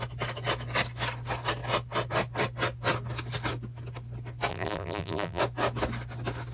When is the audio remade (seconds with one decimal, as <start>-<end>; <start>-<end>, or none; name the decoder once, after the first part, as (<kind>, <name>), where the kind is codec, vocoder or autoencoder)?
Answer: 4.5-5.4 (vocoder, BigVGAN v2)